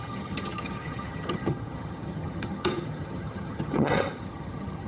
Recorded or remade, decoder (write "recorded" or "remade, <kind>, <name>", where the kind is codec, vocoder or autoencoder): remade, vocoder, HiFi-GAN